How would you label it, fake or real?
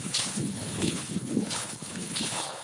fake